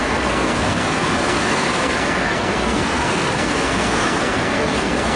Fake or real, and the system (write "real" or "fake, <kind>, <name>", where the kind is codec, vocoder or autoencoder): fake, codec, SNAC